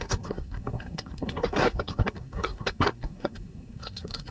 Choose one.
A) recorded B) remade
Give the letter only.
B